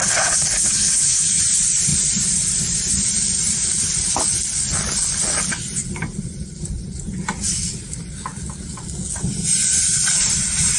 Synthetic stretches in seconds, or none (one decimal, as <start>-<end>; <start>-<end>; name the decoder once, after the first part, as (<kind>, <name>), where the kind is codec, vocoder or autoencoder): 0.0-1.4 (codec, HILCodec)